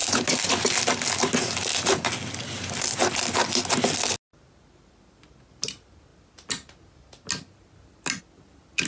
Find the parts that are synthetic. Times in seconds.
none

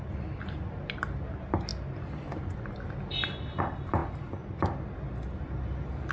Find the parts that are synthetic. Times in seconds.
none

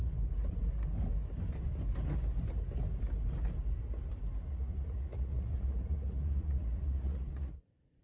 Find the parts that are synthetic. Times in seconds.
4.5-8.0 (vocoder, Vocos)

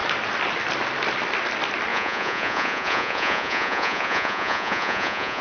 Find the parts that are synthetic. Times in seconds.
1.9-5.4 (vocoder, Vocos)

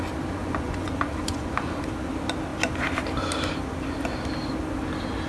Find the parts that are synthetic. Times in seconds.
0.4-1.8 (vocoder, Vocos)

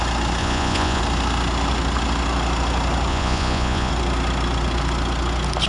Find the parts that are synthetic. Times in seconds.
0.4-1.0 (vocoder, Vocos); 3.1-3.9

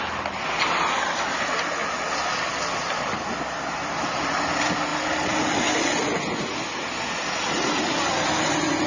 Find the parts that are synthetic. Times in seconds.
none